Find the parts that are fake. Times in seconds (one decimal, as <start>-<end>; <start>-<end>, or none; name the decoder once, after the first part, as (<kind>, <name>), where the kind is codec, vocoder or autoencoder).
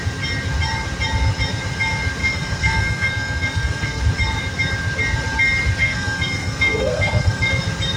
2.2-4.0 (codec, SNAC); 5.8-7.5